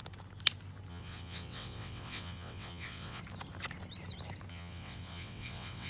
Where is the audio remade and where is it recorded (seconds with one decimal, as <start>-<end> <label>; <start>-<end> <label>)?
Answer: 0.0-0.9 recorded; 0.9-3.2 remade; 3.2-4.5 recorded; 4.5-5.9 remade